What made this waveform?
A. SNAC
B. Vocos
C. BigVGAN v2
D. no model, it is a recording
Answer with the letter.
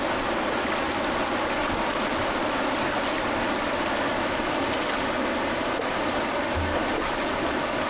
D